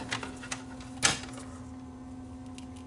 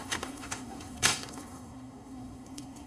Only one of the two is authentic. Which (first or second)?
first